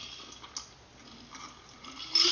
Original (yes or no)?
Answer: yes